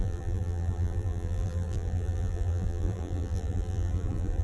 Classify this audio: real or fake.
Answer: fake